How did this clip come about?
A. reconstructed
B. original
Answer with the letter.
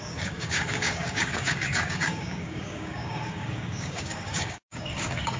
A